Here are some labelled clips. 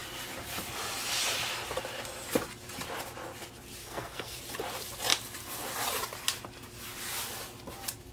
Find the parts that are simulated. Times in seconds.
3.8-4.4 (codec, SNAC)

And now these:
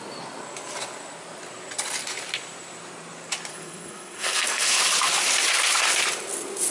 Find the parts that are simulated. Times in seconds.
3.5-4.8 (codec, SNAC)

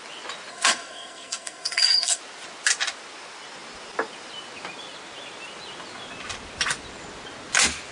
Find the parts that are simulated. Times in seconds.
0.5-2.2 (codec, SNAC)

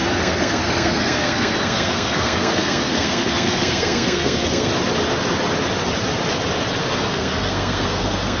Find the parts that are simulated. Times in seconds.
0.0-4.7 (codec, SNAC); 6.8-8.4

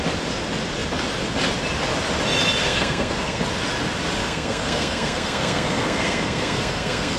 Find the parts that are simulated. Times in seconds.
2.6-3.4 (codec, SNAC); 4.2-7.2